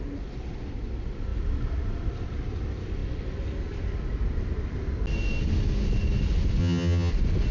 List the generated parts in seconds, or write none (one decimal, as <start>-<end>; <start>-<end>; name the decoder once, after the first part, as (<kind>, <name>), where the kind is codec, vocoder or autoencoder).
6.6-7.1 (vocoder, HiFi-GAN)